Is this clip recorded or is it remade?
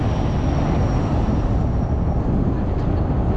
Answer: recorded